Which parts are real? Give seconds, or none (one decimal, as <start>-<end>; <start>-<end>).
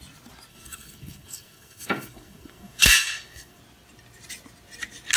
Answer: 0.0-0.5; 3.6-5.2